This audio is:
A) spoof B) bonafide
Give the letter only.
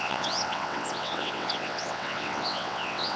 A